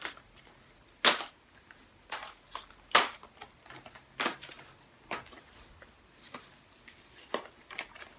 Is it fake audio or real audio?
real